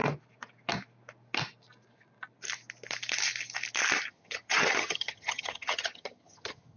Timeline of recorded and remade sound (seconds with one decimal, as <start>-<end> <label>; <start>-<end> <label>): 0.0-4.1 recorded; 4.1-6.8 remade